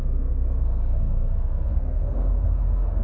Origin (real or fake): fake